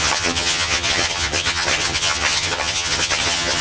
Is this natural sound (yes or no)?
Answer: no